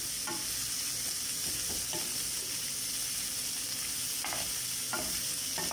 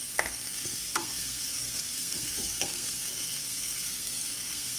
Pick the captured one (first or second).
first